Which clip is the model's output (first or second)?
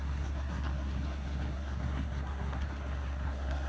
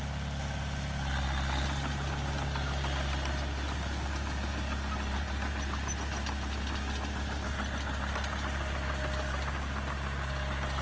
first